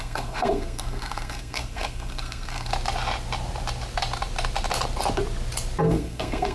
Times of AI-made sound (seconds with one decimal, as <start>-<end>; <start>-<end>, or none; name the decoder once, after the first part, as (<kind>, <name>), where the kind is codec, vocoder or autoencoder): 0.0-2.7 (codec, SNAC); 5.8-6.5

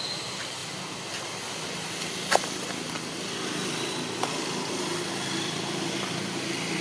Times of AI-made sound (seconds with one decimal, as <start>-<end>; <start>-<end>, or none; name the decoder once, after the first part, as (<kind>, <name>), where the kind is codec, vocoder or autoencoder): none